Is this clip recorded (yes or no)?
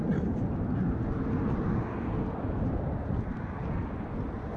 yes